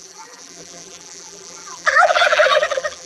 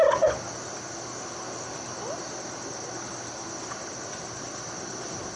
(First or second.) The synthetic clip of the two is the first